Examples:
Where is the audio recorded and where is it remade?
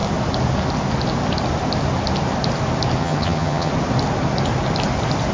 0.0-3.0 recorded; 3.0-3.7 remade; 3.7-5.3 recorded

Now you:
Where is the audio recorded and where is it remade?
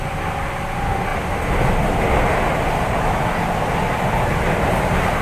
0.0-5.2 recorded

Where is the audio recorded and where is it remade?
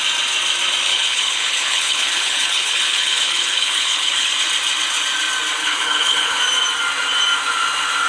0.0-0.9 recorded; 0.9-4.3 remade; 4.3-5.6 recorded; 5.6-6.4 remade; 6.4-8.1 recorded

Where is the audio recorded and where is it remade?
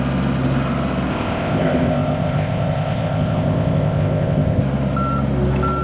0.0-1.1 recorded; 1.1-4.6 remade; 4.6-5.8 recorded